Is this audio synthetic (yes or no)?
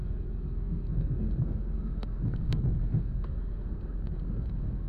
yes